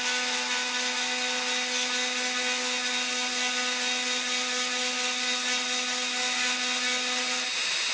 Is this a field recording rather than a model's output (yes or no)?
yes